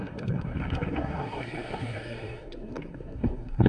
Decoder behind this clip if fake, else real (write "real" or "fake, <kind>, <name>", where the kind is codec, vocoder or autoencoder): fake, codec, SNAC